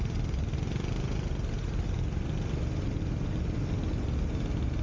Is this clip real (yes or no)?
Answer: yes